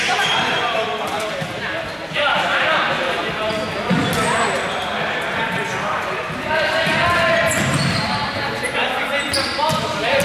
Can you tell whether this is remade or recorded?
recorded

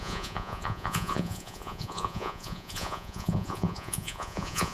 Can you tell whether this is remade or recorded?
remade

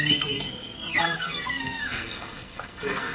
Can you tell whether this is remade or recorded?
remade